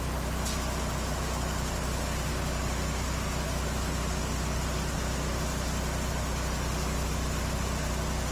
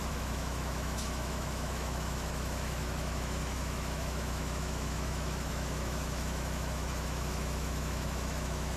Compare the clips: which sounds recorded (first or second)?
first